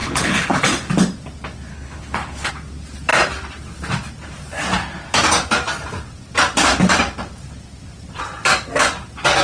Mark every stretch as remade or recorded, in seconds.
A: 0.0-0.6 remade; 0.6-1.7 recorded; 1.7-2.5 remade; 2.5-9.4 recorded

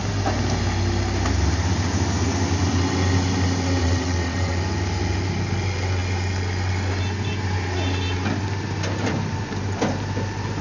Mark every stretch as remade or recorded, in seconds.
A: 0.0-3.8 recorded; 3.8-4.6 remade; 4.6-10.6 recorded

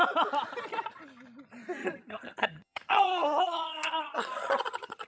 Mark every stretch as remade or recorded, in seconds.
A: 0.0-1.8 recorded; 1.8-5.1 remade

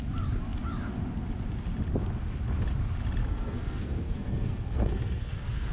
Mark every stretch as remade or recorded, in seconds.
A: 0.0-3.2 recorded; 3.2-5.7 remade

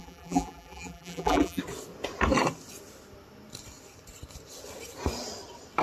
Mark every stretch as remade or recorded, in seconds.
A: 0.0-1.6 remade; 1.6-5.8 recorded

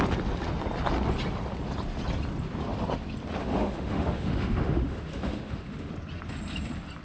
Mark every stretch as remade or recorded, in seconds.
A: 0.0-3.4 recorded; 3.4-5.9 remade; 5.9-7.0 recorded